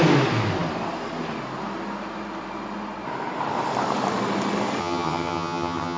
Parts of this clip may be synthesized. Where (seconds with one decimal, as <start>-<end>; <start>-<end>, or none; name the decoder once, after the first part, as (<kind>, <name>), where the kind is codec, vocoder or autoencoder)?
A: 4.8-6.0 (vocoder, HiFi-GAN)